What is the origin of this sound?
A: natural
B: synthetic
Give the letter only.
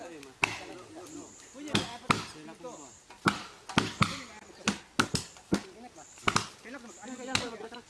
A